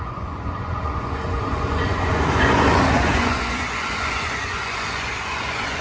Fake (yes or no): yes